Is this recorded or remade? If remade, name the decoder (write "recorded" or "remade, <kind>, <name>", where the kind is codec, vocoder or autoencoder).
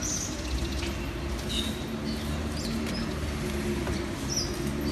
recorded